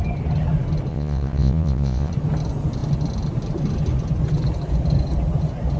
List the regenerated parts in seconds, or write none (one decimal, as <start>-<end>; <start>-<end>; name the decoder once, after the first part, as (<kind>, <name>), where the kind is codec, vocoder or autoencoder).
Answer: 0.9-2.1 (vocoder, Vocos)